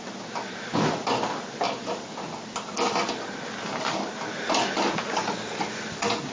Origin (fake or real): real